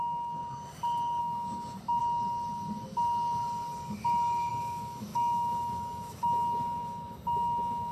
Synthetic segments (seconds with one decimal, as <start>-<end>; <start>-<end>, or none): 0.0-0.4; 1.2-2.0; 4.5-7.9